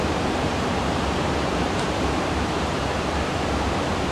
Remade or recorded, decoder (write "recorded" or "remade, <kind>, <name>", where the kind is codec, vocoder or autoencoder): remade, vocoder, BigVGAN v2